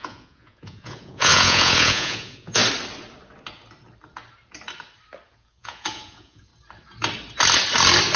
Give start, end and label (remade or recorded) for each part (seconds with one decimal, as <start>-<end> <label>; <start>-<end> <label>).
0.0-2.6 remade; 2.6-5.3 recorded; 5.3-6.5 remade; 6.5-8.2 recorded